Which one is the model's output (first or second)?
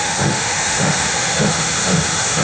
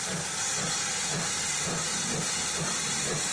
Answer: first